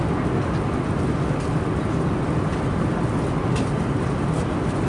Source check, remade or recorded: recorded